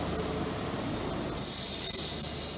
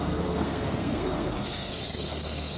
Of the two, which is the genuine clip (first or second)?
first